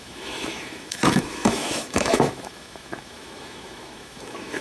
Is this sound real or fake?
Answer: fake